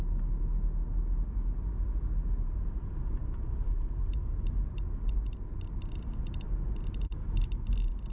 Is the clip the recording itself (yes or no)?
yes